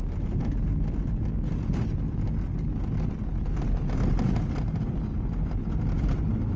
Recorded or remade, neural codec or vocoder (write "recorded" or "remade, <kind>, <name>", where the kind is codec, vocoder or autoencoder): recorded